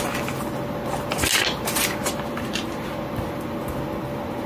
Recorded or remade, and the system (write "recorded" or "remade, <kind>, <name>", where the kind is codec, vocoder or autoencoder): recorded